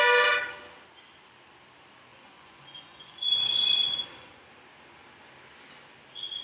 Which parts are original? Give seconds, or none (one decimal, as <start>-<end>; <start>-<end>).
0.0-2.1; 4.4-6.4

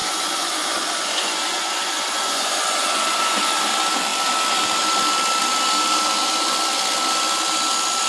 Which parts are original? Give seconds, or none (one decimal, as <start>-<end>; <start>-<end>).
3.4-8.1

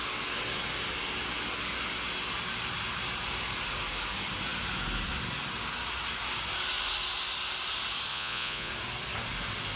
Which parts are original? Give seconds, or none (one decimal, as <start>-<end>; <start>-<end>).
0.0-8.1; 8.7-9.8

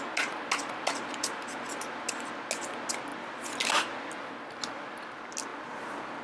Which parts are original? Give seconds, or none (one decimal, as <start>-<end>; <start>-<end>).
0.0-6.2